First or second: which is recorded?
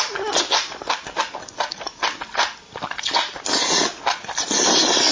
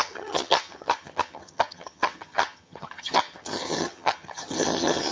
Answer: first